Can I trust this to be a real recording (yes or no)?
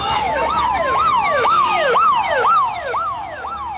no